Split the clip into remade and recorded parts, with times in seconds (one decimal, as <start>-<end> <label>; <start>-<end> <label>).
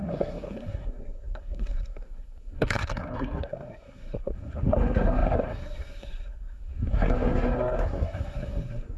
0.0-9.0 remade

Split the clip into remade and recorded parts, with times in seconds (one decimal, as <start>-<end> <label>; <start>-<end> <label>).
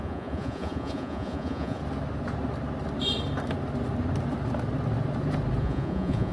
0.0-1.8 remade; 1.8-5.6 recorded; 5.6-6.3 remade